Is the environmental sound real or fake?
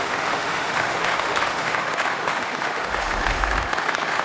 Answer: fake